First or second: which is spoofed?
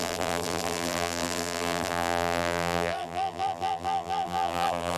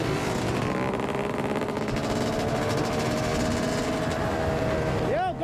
first